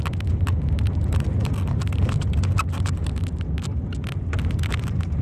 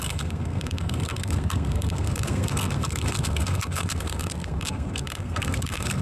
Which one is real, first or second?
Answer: first